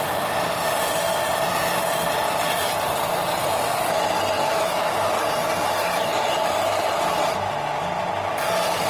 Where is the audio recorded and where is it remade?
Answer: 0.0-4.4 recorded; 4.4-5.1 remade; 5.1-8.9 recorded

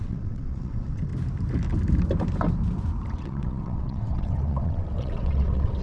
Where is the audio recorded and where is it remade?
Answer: 0.0-1.1 remade; 1.1-3.1 recorded; 3.1-5.8 remade

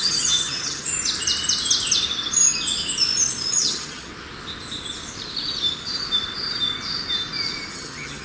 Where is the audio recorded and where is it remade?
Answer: 0.0-0.9 remade; 0.9-3.5 recorded; 3.5-4.1 remade; 4.1-7.7 recorded; 7.7-8.2 remade

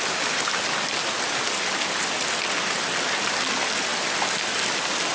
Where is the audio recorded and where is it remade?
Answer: 0.0-5.1 recorded

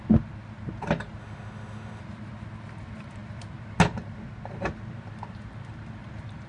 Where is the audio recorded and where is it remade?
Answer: 0.0-1.2 recorded; 1.2-2.0 remade; 2.0-6.5 recorded

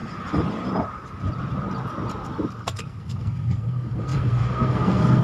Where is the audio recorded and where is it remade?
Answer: 0.0-2.5 recorded; 2.5-5.2 remade

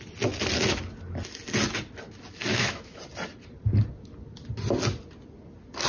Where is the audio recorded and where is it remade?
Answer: 0.0-2.5 recorded; 2.5-3.0 remade; 3.0-5.9 recorded

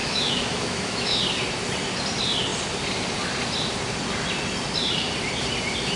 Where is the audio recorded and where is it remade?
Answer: 0.0-1.2 remade; 1.2-6.0 recorded